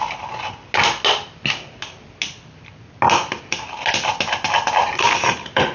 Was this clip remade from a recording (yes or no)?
no